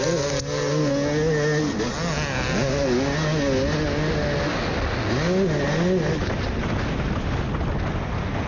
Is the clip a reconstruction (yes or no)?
no